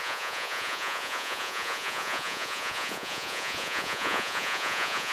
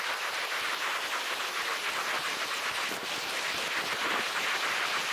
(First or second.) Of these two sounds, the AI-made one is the first